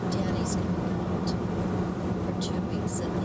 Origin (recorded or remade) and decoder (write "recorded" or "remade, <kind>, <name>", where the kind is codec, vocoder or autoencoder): recorded